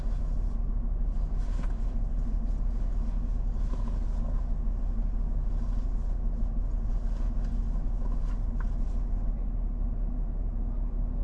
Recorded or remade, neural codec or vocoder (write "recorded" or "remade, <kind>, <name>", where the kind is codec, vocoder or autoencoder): recorded